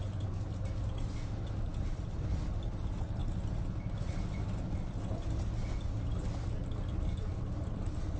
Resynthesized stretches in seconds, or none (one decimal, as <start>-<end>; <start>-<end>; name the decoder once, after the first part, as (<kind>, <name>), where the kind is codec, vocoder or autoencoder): none